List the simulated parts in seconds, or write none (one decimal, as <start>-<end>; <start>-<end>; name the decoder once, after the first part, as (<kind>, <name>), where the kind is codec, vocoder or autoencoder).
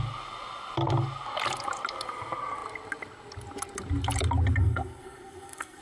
4.6-5.8 (codec, SNAC)